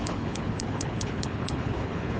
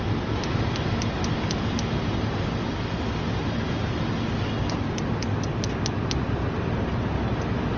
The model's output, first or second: first